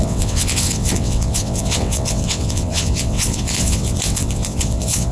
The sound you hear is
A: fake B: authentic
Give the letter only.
A